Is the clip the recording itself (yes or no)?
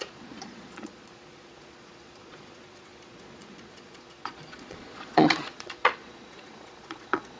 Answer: no